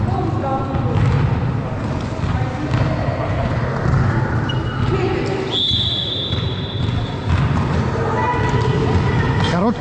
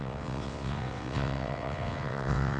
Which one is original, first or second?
first